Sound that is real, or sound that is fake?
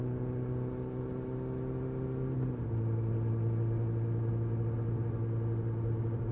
real